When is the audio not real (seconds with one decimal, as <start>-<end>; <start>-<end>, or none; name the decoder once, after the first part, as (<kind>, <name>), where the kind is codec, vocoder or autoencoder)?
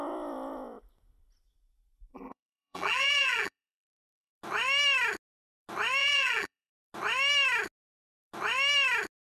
2.1-4.3 (vocoder, BigVGAN v2); 6.0-6.7